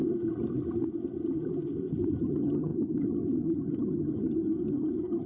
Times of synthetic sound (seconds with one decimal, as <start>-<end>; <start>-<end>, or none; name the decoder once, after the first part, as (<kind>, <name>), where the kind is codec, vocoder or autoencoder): 2.2-5.3 (vocoder, HiFi-GAN)

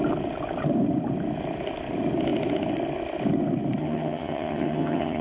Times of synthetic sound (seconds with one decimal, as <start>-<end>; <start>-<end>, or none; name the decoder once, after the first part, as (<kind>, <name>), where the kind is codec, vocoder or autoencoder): 3.8-5.2 (vocoder, HiFi-GAN)

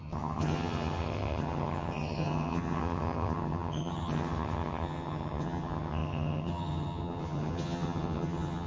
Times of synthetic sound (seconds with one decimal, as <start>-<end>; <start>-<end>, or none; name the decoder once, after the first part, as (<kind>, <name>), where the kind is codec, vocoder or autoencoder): 0.0-8.7 (vocoder, HiFi-GAN)